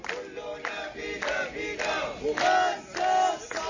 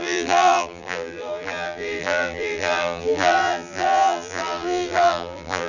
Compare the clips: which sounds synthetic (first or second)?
second